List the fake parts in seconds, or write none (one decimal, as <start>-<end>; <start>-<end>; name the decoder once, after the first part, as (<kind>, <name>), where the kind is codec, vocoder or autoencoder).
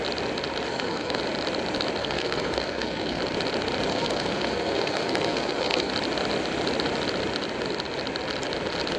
0.7-1.2 (codec, SNAC); 2.0-3.2; 3.9-5.9